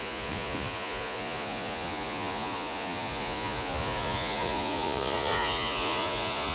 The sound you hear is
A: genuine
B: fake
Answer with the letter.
B